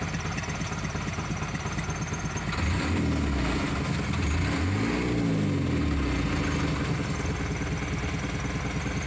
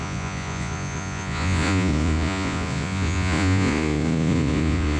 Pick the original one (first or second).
first